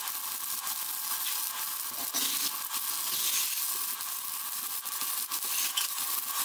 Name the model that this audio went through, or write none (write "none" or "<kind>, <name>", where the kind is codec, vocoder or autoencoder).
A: none